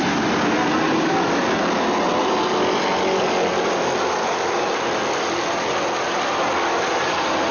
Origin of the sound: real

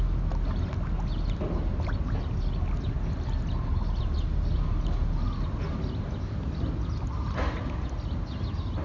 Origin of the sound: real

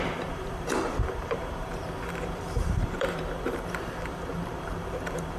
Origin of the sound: fake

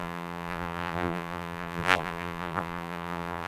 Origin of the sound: fake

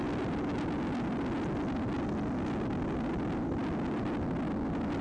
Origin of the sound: real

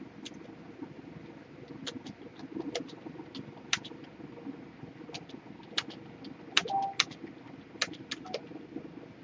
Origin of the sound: real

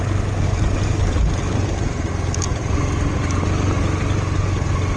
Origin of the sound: real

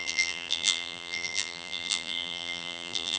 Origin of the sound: fake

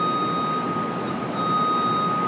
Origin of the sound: real